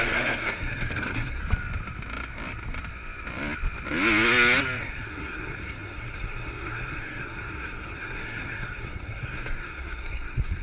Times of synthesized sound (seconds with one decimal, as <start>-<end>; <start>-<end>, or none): 0.0-1.4; 4.8-10.6